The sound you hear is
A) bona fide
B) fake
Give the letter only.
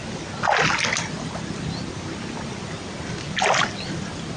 A